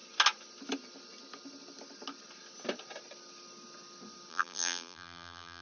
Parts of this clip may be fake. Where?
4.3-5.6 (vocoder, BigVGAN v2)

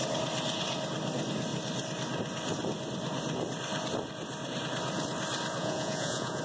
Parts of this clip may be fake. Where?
5.6-6.4 (vocoder, Vocos)

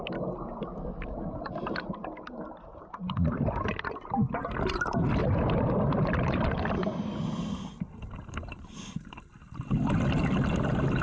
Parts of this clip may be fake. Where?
0.5-1.2 (vocoder, BigVGAN v2); 5.2-6.5

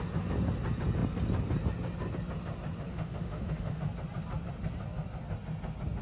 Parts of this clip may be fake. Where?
2.9-3.8 (autoencoder, DAC-VAE)